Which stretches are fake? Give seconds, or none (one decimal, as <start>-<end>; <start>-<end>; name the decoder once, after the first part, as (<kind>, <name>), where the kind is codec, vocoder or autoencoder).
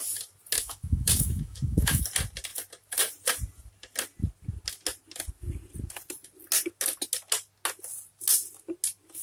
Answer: 0.6-2.0 (autoencoder, DAC-VAE)